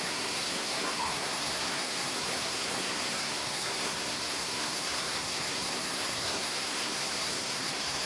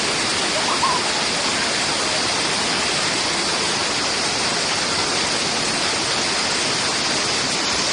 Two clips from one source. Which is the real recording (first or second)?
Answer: second